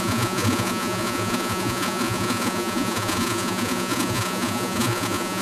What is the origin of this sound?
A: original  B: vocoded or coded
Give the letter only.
B